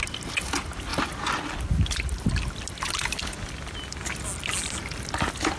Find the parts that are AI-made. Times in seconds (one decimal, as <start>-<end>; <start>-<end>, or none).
none